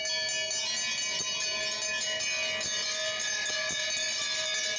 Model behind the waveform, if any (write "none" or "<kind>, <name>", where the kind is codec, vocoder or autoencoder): none